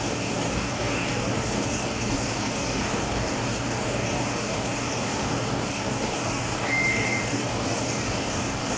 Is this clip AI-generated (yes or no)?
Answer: yes